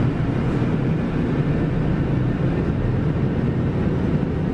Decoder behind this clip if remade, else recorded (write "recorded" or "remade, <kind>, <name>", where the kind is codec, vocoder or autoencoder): recorded